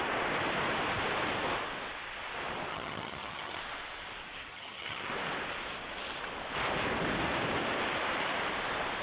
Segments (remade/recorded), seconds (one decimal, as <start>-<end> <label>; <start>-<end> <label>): 0.0-2.7 recorded; 2.7-3.6 remade; 3.6-4.5 recorded; 4.5-5.1 remade; 5.1-9.0 recorded